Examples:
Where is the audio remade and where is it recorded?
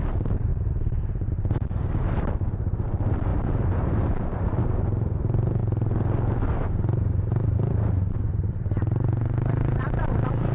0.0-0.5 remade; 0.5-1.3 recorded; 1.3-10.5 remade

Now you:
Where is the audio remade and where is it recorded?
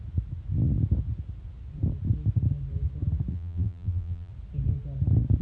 0.0-3.3 recorded; 3.3-4.3 remade; 4.3-5.4 recorded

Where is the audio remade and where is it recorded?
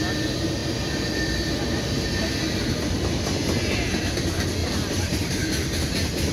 0.0-4.6 recorded; 4.6-5.3 remade; 5.3-6.3 recorded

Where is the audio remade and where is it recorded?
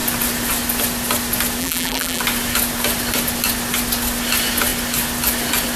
0.0-1.6 recorded; 1.6-2.2 remade; 2.2-5.8 recorded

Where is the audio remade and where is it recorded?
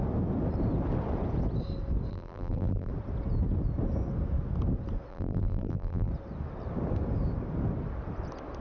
0.0-2.1 recorded; 2.1-2.9 remade; 2.9-5.1 recorded; 5.1-6.1 remade; 6.1-8.6 recorded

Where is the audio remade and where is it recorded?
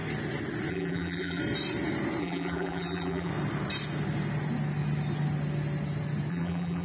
0.0-0.7 recorded; 0.7-1.4 remade; 1.4-2.2 recorded; 2.2-3.3 remade; 3.3-6.3 recorded; 6.3-6.8 remade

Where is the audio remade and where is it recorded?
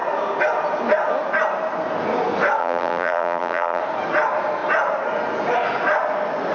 0.0-2.6 recorded; 2.6-3.8 remade; 3.8-6.5 recorded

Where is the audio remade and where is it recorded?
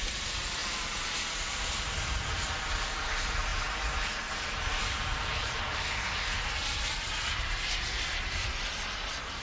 0.0-9.4 recorded